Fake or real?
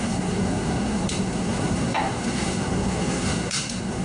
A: fake